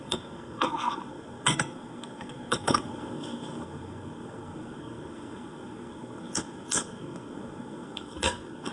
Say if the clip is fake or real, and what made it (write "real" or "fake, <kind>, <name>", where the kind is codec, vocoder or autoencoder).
fake, codec, SNAC